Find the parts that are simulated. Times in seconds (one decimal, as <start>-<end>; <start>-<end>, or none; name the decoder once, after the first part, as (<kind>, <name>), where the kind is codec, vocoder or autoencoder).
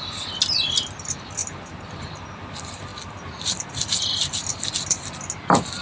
none